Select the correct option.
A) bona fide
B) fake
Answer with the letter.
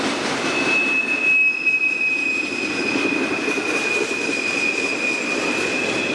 A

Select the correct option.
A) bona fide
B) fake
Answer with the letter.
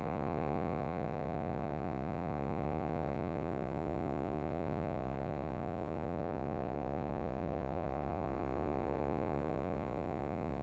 B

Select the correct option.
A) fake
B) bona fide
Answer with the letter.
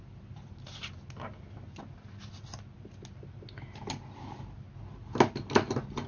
B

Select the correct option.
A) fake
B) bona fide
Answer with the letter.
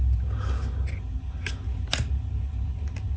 B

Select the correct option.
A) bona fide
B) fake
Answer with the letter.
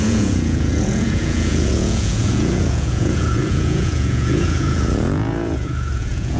B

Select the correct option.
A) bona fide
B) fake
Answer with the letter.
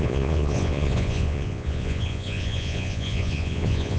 B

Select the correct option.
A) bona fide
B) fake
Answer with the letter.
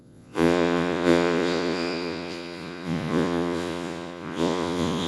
B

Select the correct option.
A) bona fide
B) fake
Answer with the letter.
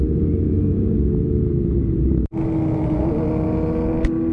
A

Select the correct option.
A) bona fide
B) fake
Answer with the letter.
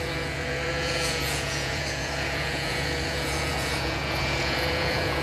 B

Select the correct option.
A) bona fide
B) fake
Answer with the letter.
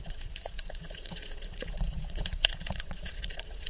B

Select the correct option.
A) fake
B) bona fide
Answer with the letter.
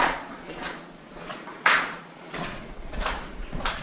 A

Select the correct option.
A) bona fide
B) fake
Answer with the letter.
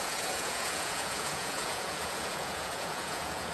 B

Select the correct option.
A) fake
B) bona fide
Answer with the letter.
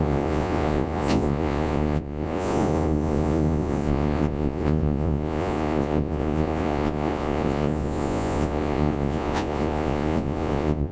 A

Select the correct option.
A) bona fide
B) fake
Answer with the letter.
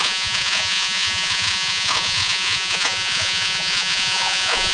B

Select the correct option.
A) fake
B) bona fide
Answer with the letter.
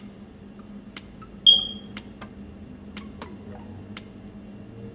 B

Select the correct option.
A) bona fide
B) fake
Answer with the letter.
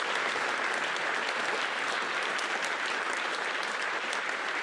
A